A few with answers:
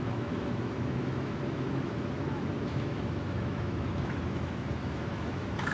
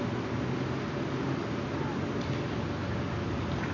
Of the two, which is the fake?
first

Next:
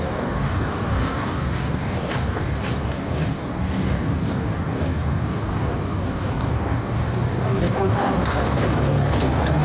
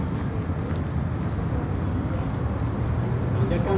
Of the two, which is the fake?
first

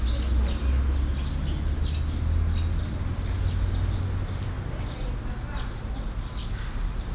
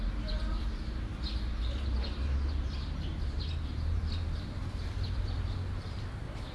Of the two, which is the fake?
second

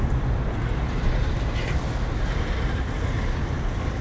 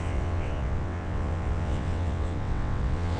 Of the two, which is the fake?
second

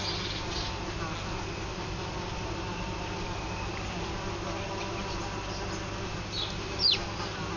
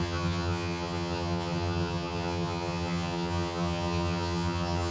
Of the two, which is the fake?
second